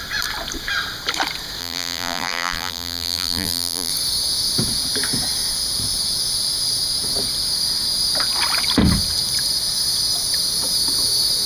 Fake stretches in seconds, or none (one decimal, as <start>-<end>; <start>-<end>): 1.6-3.9